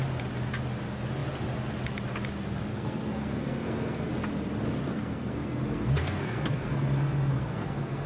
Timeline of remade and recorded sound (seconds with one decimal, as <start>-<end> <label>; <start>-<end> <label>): 0.0-2.7 recorded; 2.7-4.1 remade; 4.1-4.8 recorded; 4.8-8.1 remade